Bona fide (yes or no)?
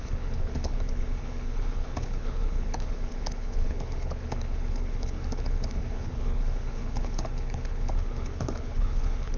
no